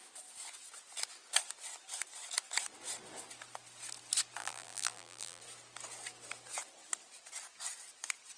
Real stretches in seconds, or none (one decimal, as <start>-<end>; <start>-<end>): 0.0-4.4; 5.4-8.4